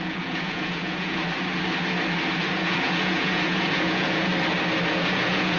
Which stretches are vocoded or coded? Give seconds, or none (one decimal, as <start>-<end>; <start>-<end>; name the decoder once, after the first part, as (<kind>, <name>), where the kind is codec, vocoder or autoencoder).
0.0-1.2 (vocoder, Vocos); 2.4-4.3; 4.9-5.6